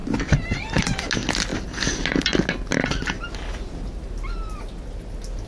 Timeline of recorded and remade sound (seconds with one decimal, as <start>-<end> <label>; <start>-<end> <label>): 0.0-5.5 recorded